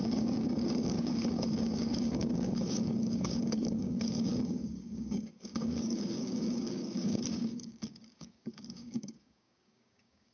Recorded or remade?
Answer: remade